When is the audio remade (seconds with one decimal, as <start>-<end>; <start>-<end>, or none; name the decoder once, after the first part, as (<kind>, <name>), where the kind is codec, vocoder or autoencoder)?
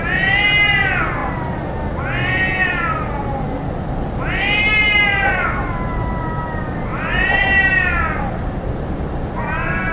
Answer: 2.6-3.1 (vocoder, BigVGAN v2); 6.9-7.6